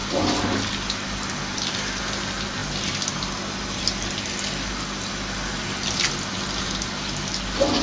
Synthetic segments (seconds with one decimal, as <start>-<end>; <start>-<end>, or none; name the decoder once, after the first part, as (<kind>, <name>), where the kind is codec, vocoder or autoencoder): none